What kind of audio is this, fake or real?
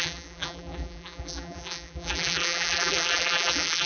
fake